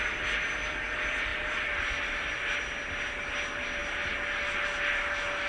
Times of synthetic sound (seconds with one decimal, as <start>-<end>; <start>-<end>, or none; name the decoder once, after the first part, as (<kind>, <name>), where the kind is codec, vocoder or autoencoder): none